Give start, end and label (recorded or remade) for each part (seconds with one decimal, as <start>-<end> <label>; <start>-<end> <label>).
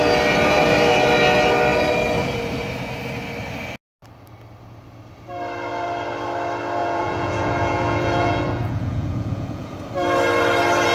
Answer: 0.0-6.8 recorded; 6.8-9.7 remade; 9.7-10.9 recorded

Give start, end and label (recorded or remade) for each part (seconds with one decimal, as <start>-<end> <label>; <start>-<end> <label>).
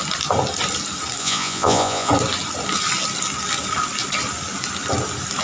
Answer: 0.0-1.2 recorded; 1.2-2.1 remade; 2.1-5.4 recorded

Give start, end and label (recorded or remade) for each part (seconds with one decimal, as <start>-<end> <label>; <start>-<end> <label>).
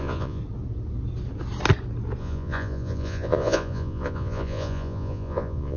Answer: 0.0-0.4 remade; 0.4-2.2 recorded; 2.2-5.8 remade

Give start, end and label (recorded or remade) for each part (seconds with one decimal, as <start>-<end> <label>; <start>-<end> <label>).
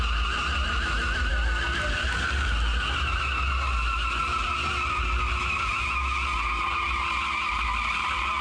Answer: 0.0-8.4 recorded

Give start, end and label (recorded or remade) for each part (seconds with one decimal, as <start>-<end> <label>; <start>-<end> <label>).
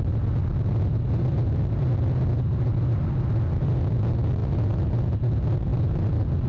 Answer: 0.0-6.5 recorded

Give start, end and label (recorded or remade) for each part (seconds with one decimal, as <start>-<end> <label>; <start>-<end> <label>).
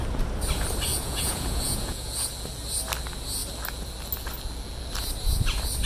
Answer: 0.0-0.9 recorded; 0.9-2.3 remade; 2.3-5.9 recorded